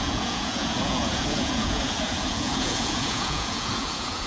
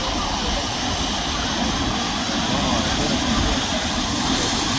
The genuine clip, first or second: second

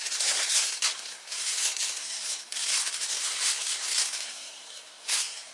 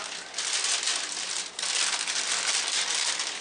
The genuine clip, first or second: second